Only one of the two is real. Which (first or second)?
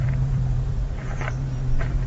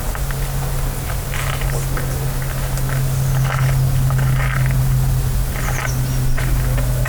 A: second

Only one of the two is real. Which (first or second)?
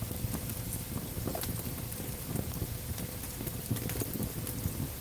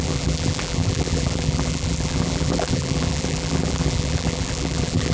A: first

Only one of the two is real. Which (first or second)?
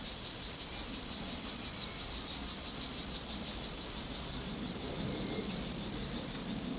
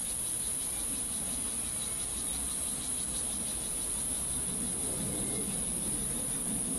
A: second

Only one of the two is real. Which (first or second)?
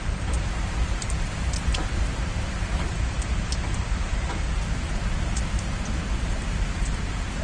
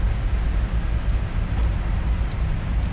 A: second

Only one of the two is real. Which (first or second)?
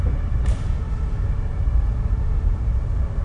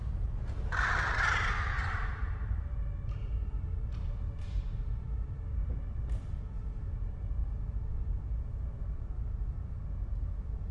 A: second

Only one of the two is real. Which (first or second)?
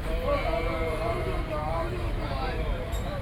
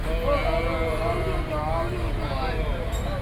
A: second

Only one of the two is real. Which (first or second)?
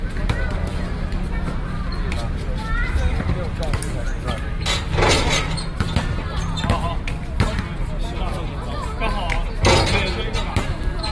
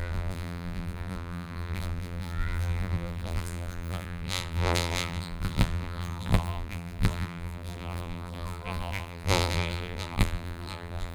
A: first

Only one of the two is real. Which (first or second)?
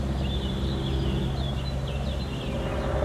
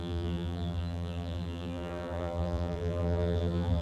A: first